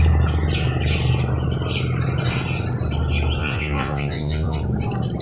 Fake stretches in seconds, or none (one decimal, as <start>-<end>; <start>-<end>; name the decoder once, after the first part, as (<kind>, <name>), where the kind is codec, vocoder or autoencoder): 3.4-4.6 (vocoder, Vocos)